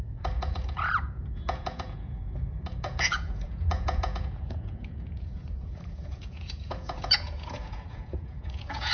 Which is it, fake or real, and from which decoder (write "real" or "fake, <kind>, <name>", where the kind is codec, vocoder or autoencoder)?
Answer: fake, vocoder, Vocos